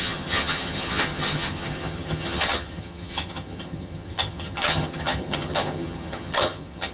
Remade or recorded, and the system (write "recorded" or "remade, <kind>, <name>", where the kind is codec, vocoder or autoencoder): remade, vocoder, HiFi-GAN